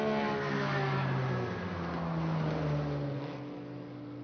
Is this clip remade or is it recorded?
recorded